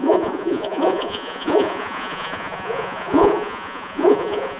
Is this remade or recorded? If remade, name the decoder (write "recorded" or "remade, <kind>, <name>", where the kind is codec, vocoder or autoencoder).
remade, vocoder, Vocos